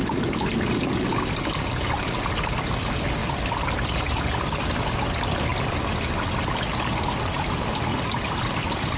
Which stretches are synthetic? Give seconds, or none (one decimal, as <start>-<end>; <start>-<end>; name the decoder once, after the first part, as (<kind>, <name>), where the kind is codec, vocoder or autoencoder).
3.2-4.0 (vocoder, BigVGAN v2); 7.9-8.6